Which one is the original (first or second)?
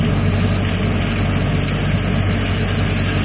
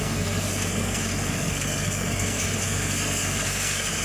first